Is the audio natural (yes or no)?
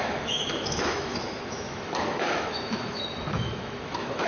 no